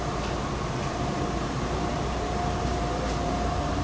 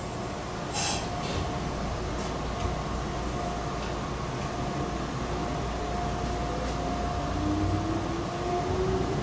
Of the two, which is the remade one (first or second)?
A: first